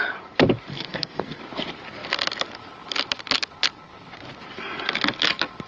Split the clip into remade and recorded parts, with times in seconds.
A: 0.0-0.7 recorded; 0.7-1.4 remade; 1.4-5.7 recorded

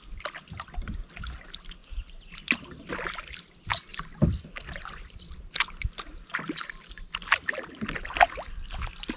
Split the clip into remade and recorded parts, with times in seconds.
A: 0.0-9.2 recorded

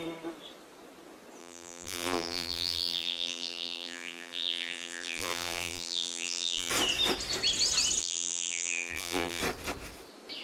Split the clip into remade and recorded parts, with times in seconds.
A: 0.0-1.4 recorded; 1.4-6.7 remade; 6.7-8.0 recorded; 8.0-9.4 remade; 9.4-10.4 recorded

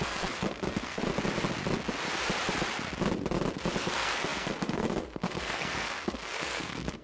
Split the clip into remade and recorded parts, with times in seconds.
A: 0.0-1.0 remade; 1.0-3.8 recorded; 3.8-7.0 remade

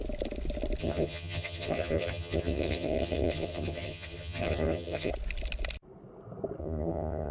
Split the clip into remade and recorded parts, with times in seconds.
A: 0.0-0.8 recorded; 0.8-5.1 remade; 5.1-6.6 recorded; 6.6-7.3 remade